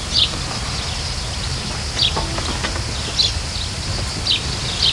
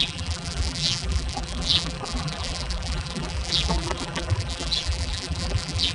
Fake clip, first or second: second